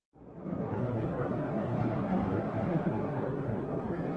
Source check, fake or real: fake